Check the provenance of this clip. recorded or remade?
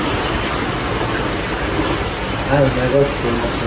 recorded